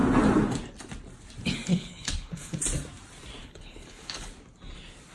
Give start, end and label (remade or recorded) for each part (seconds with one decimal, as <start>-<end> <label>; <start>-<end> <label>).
0.0-1.7 recorded; 1.7-2.6 remade; 2.6-3.4 recorded; 3.4-4.3 remade; 4.3-5.1 recorded